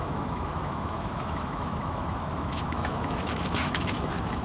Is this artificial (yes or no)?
yes